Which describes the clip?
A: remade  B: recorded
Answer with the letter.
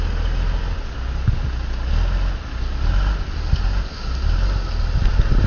B